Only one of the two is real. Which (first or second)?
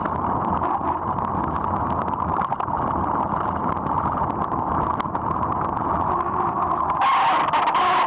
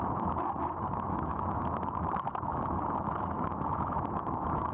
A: first